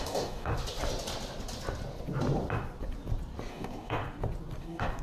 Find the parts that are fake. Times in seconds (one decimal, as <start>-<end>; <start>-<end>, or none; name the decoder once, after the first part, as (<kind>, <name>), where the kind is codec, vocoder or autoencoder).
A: 0.0-0.5 (codec, DAC); 3.5-4.0; 4.6-5.0